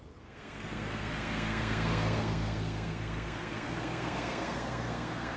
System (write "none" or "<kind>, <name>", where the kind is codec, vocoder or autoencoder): codec, SNAC